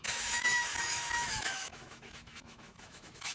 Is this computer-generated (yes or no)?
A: yes